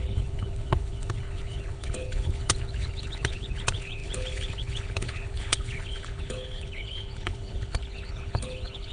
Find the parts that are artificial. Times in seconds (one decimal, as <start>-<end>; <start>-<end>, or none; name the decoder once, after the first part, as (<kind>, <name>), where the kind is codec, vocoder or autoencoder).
0.0-8.9 (codec, HILCodec)